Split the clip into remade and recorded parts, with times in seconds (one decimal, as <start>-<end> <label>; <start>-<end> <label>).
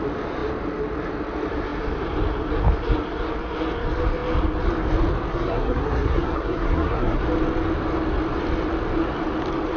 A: 0.0-5.3 recorded; 5.3-7.2 remade; 7.2-9.8 recorded